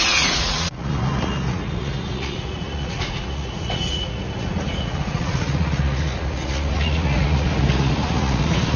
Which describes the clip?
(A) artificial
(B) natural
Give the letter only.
A